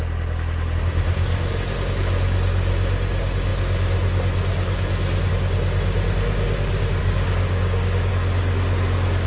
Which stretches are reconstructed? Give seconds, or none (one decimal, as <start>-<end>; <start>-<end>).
7.0-8.1